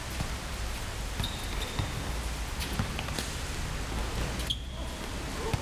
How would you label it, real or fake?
real